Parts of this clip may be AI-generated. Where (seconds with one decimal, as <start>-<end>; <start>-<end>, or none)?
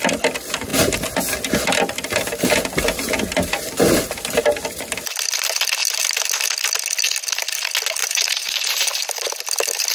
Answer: 8.0-8.9